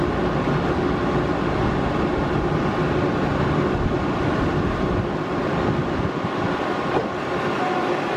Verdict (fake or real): real